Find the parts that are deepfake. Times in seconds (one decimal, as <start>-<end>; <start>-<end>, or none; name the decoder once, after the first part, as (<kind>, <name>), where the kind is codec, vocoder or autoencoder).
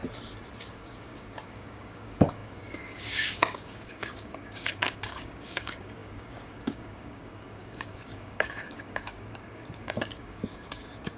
0.6-11.2 (codec, DAC)